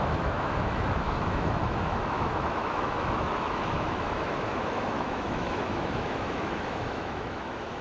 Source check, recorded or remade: remade